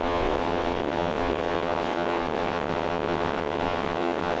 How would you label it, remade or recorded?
remade